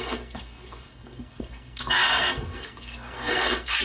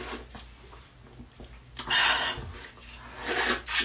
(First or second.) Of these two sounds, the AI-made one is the first